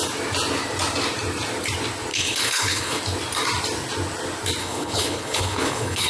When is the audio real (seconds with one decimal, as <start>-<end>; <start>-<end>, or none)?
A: 0.0-2.1; 3.0-4.6